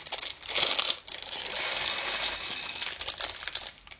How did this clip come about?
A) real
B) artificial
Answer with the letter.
A